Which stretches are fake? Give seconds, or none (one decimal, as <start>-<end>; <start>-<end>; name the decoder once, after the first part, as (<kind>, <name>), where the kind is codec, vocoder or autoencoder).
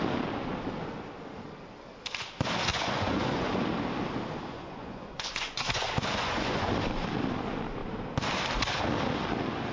2.7-3.6 (vocoder, Vocos); 4.5-6.7